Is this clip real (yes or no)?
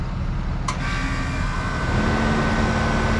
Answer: yes